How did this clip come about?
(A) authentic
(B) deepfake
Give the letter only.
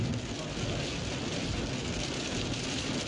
A